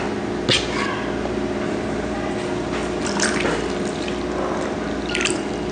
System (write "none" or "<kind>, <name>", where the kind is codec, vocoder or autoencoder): none